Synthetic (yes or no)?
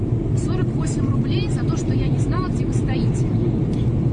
yes